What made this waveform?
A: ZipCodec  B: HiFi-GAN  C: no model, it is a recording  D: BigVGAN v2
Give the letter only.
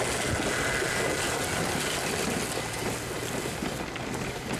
C